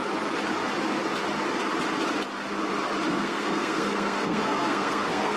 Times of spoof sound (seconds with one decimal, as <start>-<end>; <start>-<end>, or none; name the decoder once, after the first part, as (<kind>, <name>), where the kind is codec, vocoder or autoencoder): 3.1-5.4 (codec, SNAC)